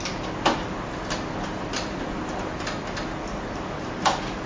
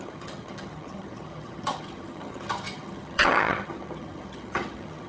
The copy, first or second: second